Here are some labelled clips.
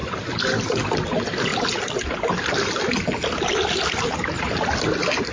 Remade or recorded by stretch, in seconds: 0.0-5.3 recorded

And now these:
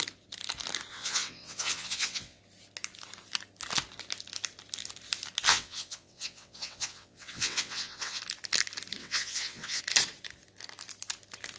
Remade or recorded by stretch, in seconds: 0.0-0.9 recorded; 0.9-2.4 remade; 2.4-5.5 recorded; 5.5-8.2 remade; 8.2-9.0 recorded; 9.0-9.8 remade; 9.8-11.6 recorded

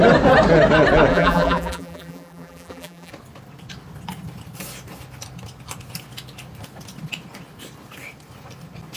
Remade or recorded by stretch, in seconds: 0.0-1.1 recorded; 1.1-3.1 remade; 3.1-9.0 recorded

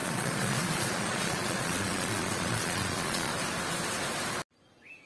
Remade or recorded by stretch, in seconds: 0.0-3.3 remade; 3.3-5.1 recorded

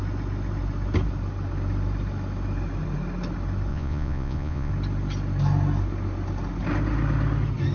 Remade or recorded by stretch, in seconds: 0.0-3.7 recorded; 3.7-4.7 remade; 4.7-7.7 recorded

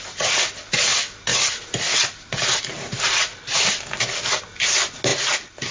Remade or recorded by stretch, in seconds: 0.0-5.7 recorded